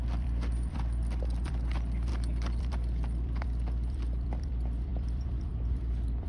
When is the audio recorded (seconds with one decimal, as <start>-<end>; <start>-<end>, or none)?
2.1-2.6